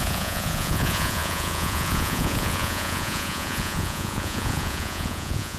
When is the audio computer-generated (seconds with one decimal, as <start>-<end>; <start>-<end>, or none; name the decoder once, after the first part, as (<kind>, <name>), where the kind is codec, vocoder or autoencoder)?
0.0-5.6 (vocoder, Vocos)